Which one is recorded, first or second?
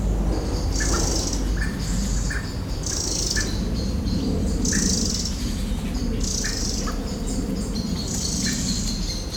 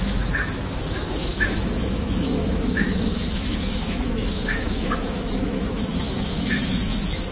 first